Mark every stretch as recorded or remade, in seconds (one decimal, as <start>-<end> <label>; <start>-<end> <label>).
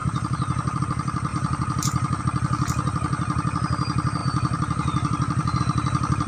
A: 0.0-0.8 remade; 0.8-1.3 recorded; 1.3-2.2 remade; 2.2-4.2 recorded; 4.2-5.6 remade; 5.6-6.3 recorded